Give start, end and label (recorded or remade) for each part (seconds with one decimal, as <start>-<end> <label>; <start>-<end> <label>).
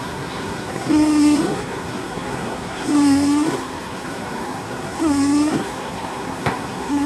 0.0-7.1 remade